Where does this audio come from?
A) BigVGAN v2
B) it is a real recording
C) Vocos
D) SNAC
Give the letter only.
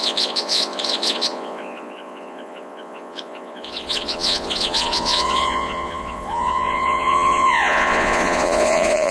C